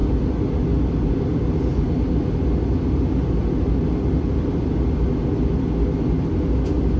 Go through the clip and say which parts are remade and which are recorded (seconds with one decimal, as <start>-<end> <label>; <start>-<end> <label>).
0.0-7.0 recorded